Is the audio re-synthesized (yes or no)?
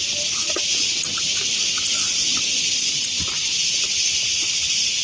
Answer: no